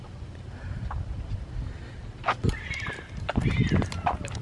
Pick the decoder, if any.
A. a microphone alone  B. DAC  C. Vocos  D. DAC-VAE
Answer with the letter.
A